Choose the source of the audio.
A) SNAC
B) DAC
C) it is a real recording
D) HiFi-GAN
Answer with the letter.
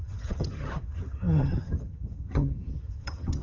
D